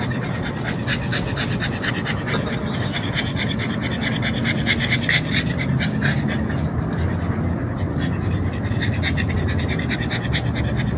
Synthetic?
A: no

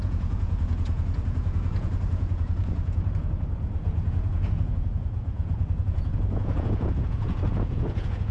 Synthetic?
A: yes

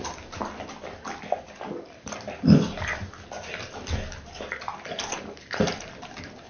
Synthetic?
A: no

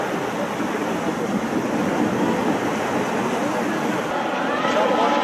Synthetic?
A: no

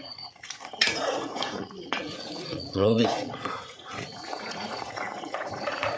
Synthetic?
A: yes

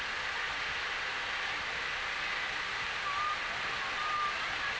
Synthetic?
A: no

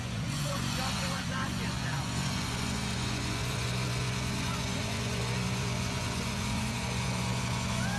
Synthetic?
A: yes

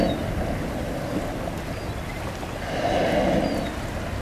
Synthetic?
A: no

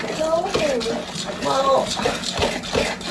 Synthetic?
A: no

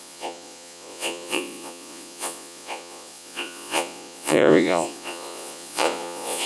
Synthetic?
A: yes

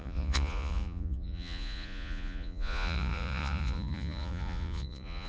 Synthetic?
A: yes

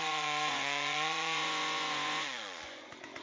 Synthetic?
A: yes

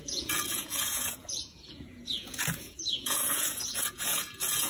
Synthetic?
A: yes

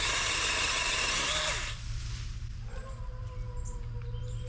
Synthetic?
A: no